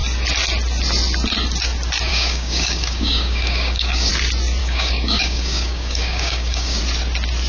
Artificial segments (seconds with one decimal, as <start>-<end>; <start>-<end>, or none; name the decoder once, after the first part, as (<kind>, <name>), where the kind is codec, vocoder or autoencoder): 2.1-4.1 (codec, DAC); 4.6-6.8